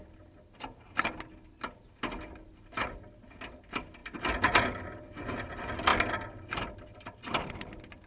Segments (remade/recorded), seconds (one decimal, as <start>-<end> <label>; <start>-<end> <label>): 0.0-8.1 recorded